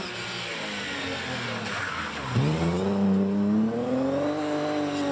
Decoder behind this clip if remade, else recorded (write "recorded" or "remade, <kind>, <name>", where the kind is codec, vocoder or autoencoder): recorded